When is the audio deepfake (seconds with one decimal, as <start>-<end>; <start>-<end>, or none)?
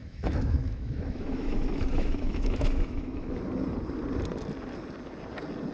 0.0-3.4